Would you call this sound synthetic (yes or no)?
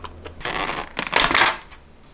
no